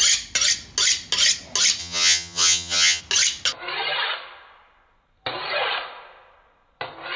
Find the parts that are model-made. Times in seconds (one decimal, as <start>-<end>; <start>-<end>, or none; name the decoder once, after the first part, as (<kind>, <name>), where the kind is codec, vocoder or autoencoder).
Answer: 1.8-3.0 (vocoder, HiFi-GAN)